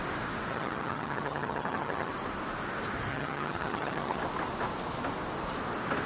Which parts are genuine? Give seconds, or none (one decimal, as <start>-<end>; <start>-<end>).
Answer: 0.0-0.5; 2.1-3.1; 4.2-6.1